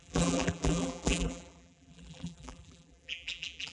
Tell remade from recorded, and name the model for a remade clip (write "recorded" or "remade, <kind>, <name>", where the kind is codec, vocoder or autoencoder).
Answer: remade, vocoder, BigVGAN v2